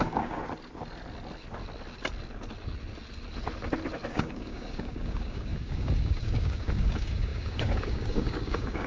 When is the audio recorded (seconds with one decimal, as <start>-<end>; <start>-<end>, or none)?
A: 0.4-4.1